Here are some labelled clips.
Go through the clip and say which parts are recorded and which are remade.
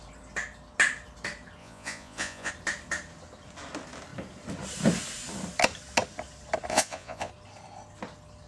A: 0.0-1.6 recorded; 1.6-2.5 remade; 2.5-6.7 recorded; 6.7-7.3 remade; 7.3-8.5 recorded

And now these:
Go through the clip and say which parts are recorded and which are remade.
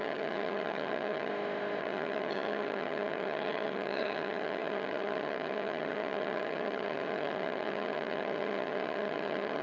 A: 0.0-1.3 remade; 1.3-1.8 recorded; 1.8-9.6 remade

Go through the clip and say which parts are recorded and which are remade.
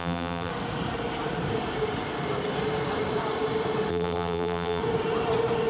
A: 0.0-0.5 remade; 0.5-3.9 recorded; 3.9-4.8 remade; 4.8-5.7 recorded